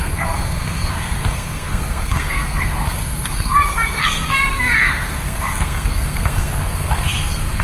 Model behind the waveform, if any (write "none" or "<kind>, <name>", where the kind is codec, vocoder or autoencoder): codec, SNAC